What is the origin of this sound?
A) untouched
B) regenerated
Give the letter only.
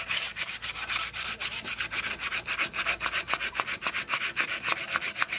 A